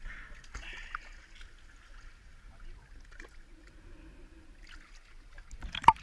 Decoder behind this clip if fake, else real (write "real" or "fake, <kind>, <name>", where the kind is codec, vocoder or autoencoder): real